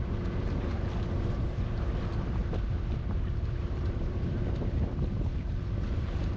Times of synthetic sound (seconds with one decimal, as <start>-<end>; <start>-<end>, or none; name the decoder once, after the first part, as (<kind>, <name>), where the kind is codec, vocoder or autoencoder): 0.0-2.4 (vocoder, BigVGAN v2); 2.9-6.4